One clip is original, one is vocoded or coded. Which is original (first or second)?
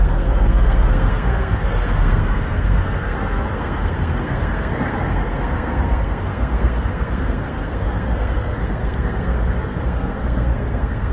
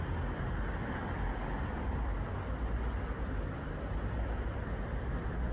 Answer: second